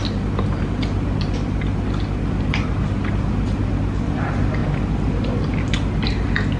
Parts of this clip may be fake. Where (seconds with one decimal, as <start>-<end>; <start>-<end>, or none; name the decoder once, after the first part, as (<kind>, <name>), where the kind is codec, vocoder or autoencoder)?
none